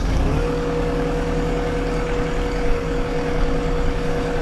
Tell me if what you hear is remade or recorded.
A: remade